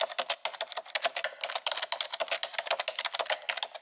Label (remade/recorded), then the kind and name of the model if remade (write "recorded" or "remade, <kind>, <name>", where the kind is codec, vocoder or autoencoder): recorded